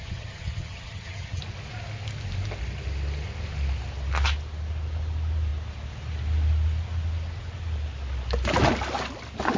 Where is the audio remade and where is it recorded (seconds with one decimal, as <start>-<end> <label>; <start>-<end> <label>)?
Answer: 0.0-1.4 remade; 1.4-9.6 recorded